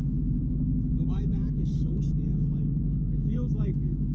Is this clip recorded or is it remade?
remade